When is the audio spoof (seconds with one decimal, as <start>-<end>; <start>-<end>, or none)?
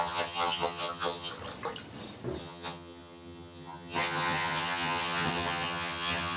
0.0-1.3; 2.4-6.4